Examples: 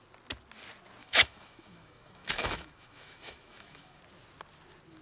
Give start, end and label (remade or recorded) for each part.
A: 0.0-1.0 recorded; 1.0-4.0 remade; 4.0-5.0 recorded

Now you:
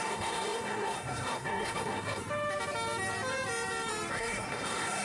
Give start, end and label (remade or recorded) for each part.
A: 0.0-2.2 remade; 2.2-4.1 recorded; 4.1-5.0 remade